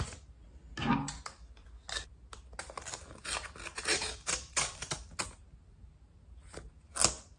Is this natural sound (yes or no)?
yes